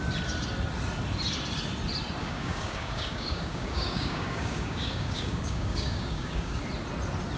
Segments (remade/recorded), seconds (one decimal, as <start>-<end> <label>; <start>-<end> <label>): 0.0-2.2 recorded; 2.2-6.6 remade; 6.6-7.4 recorded